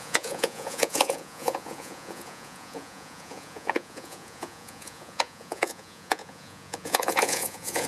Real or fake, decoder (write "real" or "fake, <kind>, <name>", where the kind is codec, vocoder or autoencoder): fake, vocoder, Vocos